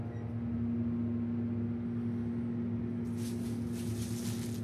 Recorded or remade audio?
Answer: recorded